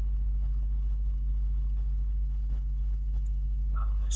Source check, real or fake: fake